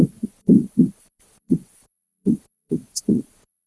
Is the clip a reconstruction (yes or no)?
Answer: yes